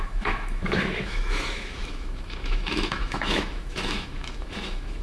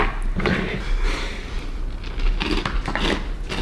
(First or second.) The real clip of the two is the second